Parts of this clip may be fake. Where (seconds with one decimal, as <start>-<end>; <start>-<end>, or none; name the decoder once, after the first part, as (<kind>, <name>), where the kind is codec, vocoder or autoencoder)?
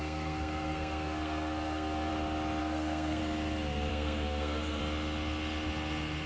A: 0.0-2.1 (codec, SNAC); 2.6-3.2; 3.9-4.8